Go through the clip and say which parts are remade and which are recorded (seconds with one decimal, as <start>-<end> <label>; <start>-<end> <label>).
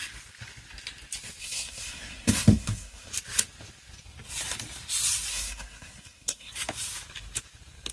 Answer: 0.0-1.4 recorded; 1.4-3.1 remade; 3.1-5.3 recorded; 5.3-6.5 remade; 6.5-7.9 recorded